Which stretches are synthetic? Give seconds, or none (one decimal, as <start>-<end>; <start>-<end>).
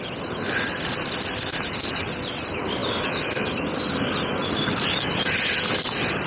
0.0-6.3